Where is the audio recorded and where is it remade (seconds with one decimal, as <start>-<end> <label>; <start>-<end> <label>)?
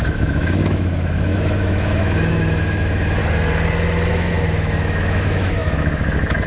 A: 0.0-3.2 remade; 3.2-4.1 recorded; 4.1-6.5 remade